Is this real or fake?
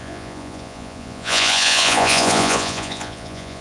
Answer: fake